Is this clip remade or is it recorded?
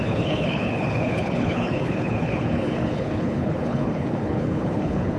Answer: remade